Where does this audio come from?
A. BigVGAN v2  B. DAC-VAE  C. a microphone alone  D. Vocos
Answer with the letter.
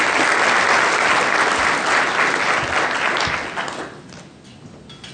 C